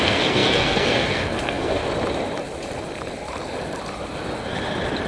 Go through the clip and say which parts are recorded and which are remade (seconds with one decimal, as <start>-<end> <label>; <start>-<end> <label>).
0.0-1.8 remade; 1.8-5.1 recorded